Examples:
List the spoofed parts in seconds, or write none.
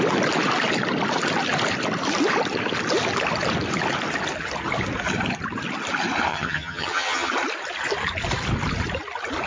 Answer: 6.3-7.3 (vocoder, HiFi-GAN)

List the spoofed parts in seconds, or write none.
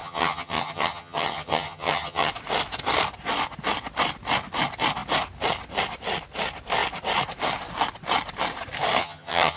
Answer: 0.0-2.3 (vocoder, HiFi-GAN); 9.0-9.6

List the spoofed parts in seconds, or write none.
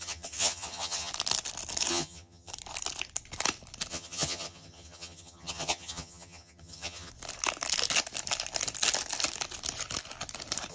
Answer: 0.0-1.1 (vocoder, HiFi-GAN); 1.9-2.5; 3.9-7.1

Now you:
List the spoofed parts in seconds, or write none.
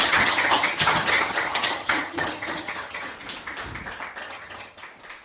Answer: 0.0-3.1 (vocoder, HiFi-GAN); 4.2-4.8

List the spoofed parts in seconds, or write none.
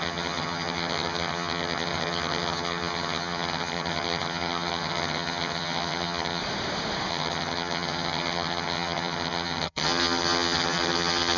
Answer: 0.0-6.4 (vocoder, HiFi-GAN); 7.1-11.4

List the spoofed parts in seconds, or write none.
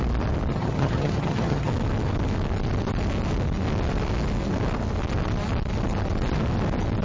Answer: 0.5-1.7 (vocoder, HiFi-GAN)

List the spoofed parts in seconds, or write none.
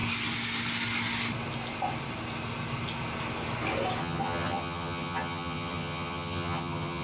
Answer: 4.0-7.0 (vocoder, HiFi-GAN)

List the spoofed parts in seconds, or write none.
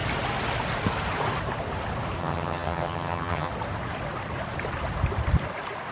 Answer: 2.2-3.5 (vocoder, HiFi-GAN)